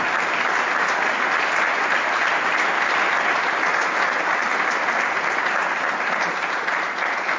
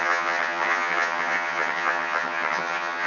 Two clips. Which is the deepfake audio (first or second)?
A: second